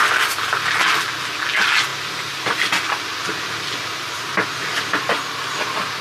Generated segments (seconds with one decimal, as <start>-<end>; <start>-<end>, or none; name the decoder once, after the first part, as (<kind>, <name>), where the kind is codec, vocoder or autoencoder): none